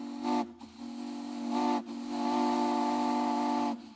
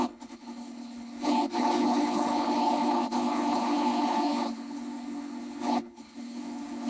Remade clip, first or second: second